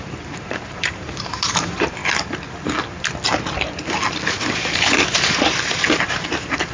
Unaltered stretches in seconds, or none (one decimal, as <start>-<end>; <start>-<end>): 2.0-4.3